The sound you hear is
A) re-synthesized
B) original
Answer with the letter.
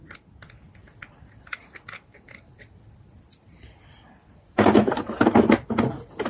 B